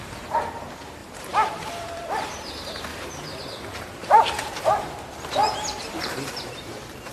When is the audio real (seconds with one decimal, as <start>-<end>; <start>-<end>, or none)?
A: 0.0-1.0; 2.5-2.9; 4.9-5.4; 6.6-7.1